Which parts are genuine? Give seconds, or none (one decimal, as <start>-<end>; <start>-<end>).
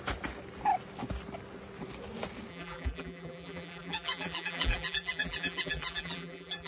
0.0-2.5